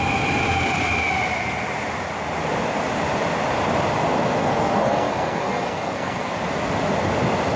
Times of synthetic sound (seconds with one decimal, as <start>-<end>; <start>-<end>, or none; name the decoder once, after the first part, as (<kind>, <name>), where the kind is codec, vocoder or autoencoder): 4.4-6.3 (codec, SNAC)

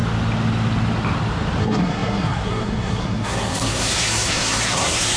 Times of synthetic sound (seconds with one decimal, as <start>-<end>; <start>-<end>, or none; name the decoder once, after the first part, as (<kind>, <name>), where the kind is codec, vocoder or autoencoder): 1.6-5.2 (codec, SNAC)